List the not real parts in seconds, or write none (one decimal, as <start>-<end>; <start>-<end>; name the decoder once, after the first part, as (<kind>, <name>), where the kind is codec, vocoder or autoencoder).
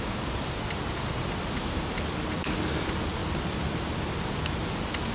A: none